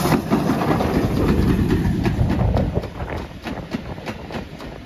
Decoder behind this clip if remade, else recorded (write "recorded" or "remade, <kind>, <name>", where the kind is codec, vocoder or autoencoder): recorded